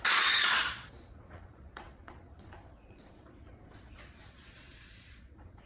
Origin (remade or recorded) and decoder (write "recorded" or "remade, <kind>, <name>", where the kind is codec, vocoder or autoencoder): remade, vocoder, Vocos